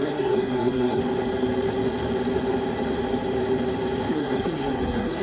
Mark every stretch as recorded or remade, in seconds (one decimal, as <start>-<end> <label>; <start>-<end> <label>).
0.0-1.0 remade; 1.0-4.1 recorded; 4.1-5.2 remade